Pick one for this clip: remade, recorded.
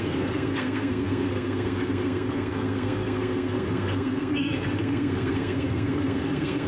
remade